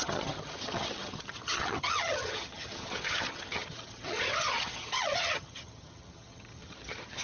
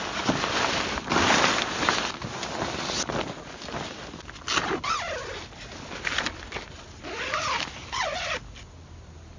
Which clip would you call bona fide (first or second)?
second